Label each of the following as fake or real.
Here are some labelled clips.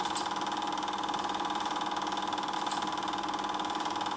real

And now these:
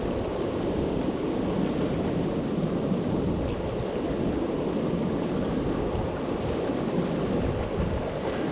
real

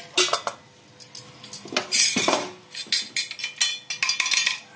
real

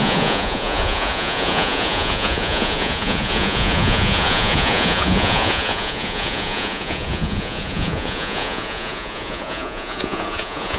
fake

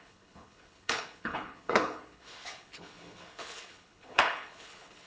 fake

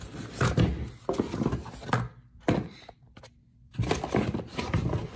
real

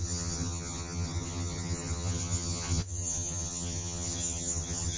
fake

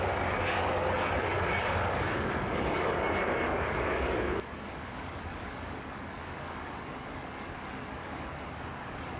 fake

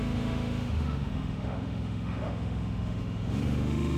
fake